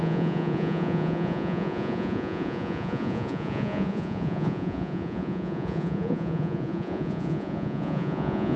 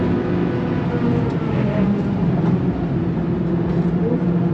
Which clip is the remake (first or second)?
first